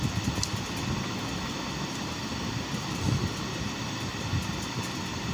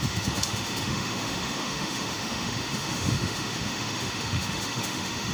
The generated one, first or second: second